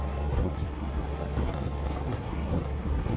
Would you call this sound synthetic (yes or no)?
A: yes